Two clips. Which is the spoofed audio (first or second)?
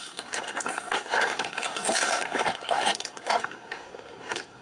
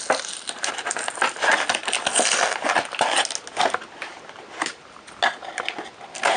first